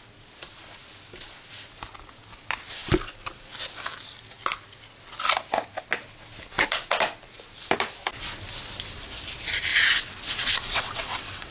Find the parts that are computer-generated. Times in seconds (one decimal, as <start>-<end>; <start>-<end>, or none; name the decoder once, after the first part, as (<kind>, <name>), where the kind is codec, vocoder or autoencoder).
9.7-11.5 (vocoder, WaveNeXt)

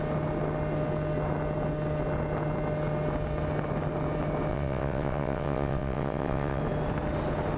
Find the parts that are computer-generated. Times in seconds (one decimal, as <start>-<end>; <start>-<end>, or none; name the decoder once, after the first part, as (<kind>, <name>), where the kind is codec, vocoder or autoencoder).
4.5-6.6 (vocoder, WaveNeXt)

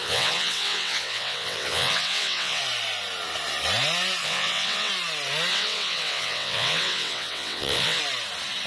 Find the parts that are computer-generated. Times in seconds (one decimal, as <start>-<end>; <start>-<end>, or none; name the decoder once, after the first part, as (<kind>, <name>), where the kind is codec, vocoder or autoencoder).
0.0-2.6 (vocoder, WaveNeXt); 4.2-4.9; 5.5-8.0